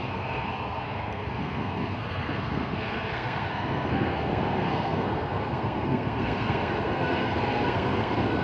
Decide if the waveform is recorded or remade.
remade